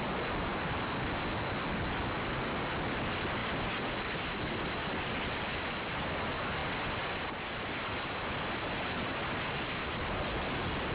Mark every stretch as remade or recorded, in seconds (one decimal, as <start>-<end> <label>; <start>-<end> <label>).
0.0-10.9 recorded